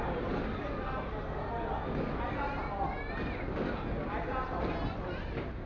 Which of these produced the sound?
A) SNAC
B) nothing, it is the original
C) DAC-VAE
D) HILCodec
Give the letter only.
B